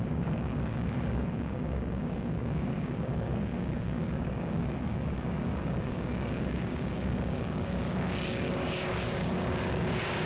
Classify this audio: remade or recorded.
remade